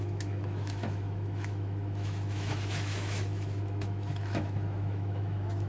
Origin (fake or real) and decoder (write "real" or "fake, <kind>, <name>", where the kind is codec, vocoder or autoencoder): fake, autoencoder, DAC-VAE